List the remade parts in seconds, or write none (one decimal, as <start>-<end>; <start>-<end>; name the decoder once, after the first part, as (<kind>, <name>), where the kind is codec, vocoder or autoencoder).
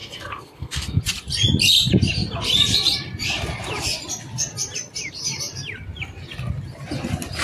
0.0-1.0 (codec, SNAC)